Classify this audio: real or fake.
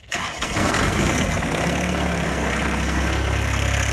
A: fake